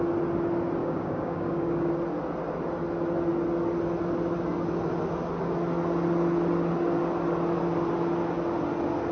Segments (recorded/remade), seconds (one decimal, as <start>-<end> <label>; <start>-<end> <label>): 0.0-0.8 recorded; 0.8-1.9 remade; 1.9-9.1 recorded